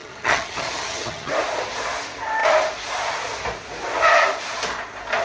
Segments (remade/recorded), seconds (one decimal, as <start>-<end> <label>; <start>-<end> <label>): 0.0-1.3 remade; 1.3-5.2 recorded